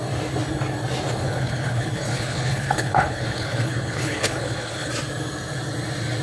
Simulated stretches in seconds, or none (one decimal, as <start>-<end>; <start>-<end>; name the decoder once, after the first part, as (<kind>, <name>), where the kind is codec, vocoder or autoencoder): 1.2-4.9 (codec, HILCodec)